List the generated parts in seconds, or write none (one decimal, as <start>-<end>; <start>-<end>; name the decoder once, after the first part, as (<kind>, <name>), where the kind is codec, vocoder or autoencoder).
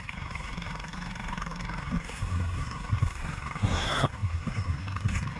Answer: 0.0-5.4 (codec, SNAC)